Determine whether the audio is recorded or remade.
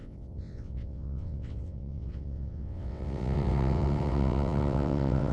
remade